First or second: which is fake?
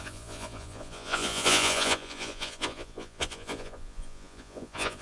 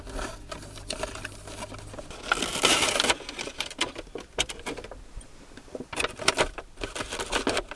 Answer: first